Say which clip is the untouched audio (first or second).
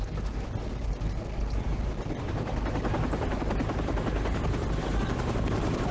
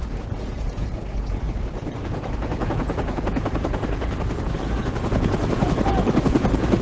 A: first